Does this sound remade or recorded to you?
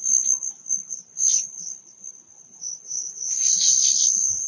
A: recorded